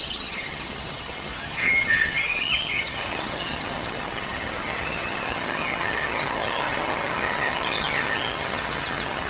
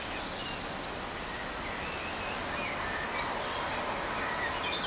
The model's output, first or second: first